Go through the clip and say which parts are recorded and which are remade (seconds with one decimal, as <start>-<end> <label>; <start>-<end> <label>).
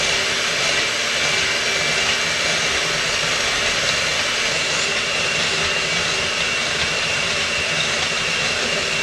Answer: 0.0-4.1 recorded; 4.1-8.5 remade; 8.5-9.0 recorded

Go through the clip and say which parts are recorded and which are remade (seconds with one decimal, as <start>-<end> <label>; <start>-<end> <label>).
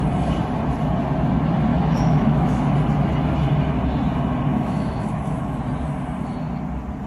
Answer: 0.0-1.7 recorded; 1.7-2.6 remade; 2.6-4.5 recorded; 4.5-5.6 remade; 5.6-7.1 recorded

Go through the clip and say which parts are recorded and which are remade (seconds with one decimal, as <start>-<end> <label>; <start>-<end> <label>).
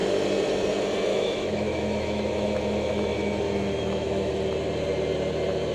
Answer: 0.0-1.1 recorded; 1.1-4.3 remade; 4.3-5.7 recorded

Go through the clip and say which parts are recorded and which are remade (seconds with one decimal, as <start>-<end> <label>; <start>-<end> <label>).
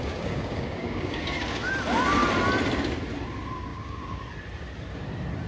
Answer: 0.0-1.7 remade; 1.7-3.7 recorded; 3.7-4.2 remade; 4.2-5.5 recorded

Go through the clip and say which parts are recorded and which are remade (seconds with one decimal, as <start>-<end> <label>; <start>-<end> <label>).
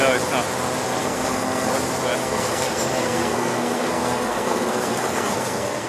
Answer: 0.0-1.0 recorded; 1.0-1.7 remade; 1.7-2.2 recorded; 2.2-5.9 remade